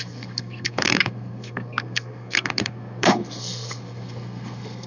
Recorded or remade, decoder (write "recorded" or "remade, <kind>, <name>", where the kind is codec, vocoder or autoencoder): remade, codec, SNAC